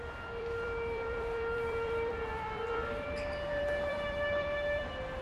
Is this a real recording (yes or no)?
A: no